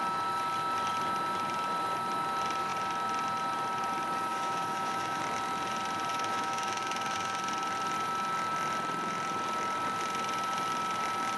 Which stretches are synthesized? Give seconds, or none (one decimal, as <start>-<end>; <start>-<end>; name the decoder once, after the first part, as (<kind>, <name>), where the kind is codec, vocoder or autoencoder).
4.3-5.2 (autoencoder, DAC-VAE); 6.1-7.4